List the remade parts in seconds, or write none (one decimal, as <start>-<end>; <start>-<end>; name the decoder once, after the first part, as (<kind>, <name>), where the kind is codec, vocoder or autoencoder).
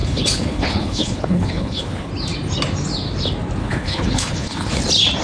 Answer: 0.0-2.1 (codec, HILCodec); 3.6-4.8